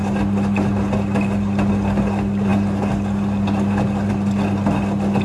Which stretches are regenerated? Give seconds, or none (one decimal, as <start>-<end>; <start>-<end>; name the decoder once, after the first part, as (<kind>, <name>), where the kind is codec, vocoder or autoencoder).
none